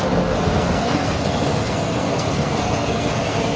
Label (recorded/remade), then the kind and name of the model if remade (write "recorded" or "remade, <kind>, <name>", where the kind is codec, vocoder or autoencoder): remade, codec, SNAC